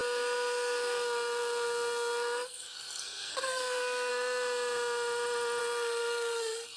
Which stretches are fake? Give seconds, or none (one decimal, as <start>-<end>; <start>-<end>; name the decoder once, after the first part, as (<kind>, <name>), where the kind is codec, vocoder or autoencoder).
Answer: 0.0-4.1 (codec, SNAC); 5.6-6.8